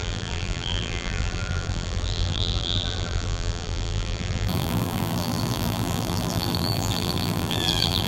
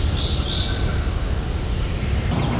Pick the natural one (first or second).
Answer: second